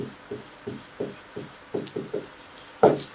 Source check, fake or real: fake